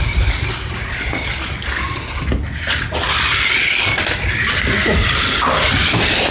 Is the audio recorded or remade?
recorded